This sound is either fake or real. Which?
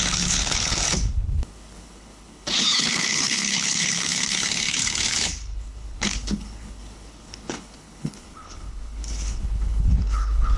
fake